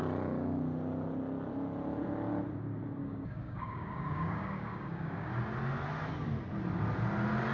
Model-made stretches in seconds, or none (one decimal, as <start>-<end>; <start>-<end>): 3.0-5.3